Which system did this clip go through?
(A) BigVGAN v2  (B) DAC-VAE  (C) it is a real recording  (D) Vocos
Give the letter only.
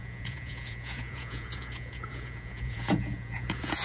D